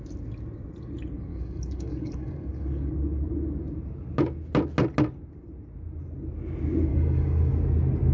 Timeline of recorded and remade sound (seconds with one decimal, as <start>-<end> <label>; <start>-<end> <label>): 0.0-1.3 recorded; 1.3-2.9 remade; 2.9-6.9 recorded; 6.9-7.5 remade; 7.5-8.1 recorded